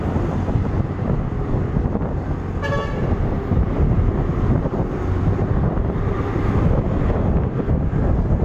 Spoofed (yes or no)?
no